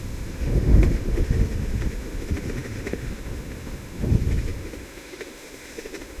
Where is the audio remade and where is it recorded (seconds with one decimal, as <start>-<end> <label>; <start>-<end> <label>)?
0.0-6.2 remade